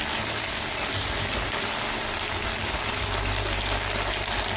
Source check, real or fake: real